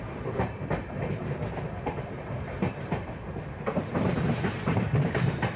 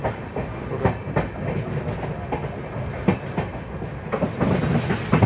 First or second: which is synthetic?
first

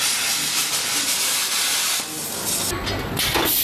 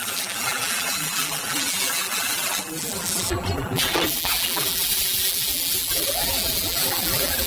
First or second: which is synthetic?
second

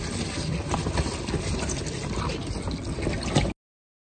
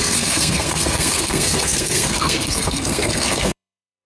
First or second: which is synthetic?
second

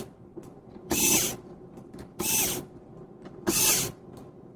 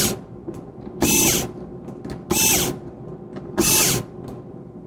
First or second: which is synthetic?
first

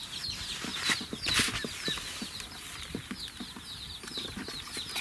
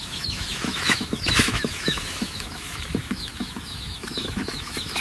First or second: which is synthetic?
second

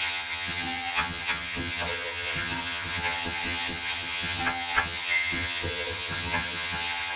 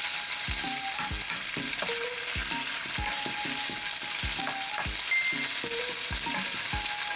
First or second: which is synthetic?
first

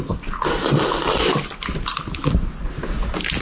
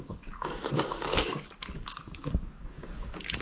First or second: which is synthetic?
second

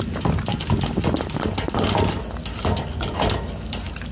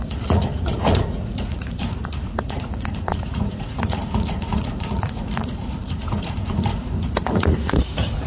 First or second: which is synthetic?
second